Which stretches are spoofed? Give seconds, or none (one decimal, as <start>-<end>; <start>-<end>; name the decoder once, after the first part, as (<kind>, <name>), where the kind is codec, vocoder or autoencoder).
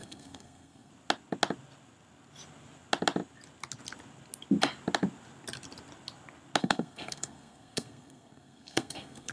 0.0-0.9 (codec, SNAC); 6.6-9.3